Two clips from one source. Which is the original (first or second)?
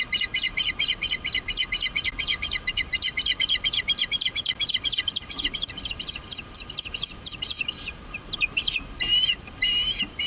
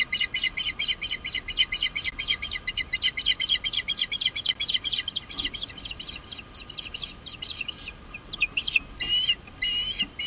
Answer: second